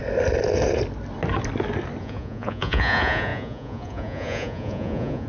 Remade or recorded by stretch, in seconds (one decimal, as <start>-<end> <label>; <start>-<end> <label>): 0.0-2.0 recorded; 2.0-5.3 remade